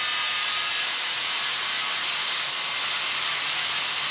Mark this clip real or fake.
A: real